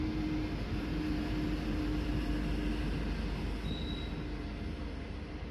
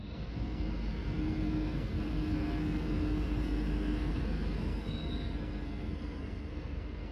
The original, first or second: first